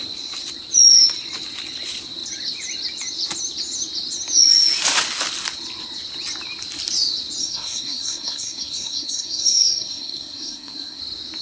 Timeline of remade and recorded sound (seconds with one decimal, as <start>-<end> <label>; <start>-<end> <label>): 0.0-7.4 recorded; 7.4-11.0 remade; 11.0-11.4 recorded